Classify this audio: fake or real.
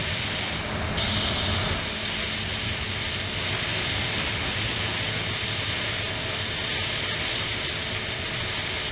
real